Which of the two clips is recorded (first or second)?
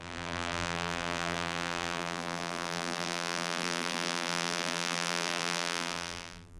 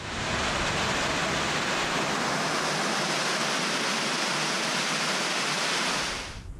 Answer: second